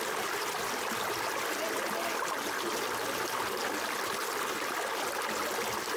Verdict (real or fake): real